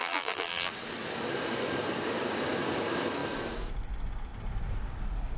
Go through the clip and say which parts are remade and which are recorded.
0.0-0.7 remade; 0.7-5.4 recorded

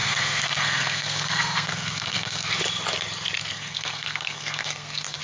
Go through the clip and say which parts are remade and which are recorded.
0.0-2.6 remade; 2.6-3.4 recorded; 3.4-5.2 remade